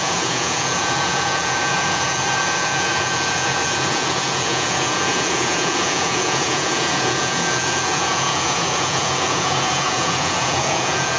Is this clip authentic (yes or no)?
no